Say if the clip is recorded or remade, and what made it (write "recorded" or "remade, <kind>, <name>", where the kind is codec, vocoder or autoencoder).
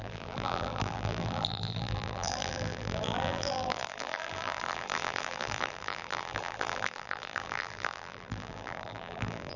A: remade, vocoder, BigVGAN v2